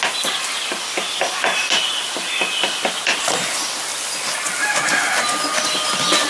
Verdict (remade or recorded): recorded